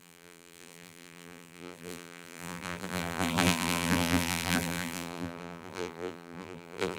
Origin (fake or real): fake